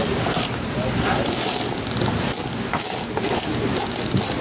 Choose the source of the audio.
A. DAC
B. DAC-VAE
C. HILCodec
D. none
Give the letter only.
D